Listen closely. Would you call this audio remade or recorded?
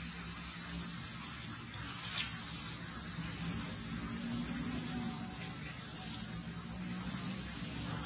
recorded